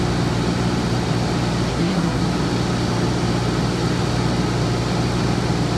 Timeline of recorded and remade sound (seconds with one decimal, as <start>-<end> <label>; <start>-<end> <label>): 0.0-1.7 recorded; 1.7-2.2 remade; 2.2-5.8 recorded